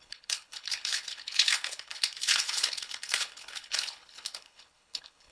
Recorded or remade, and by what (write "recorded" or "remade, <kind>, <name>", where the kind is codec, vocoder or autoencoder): remade, codec, HILCodec